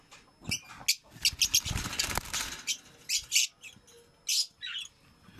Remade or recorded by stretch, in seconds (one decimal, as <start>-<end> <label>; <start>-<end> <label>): 0.0-5.4 recorded